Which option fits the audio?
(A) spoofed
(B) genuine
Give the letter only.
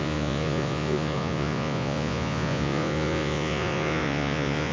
A